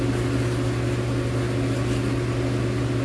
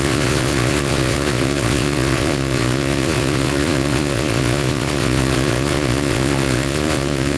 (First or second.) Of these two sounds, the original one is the first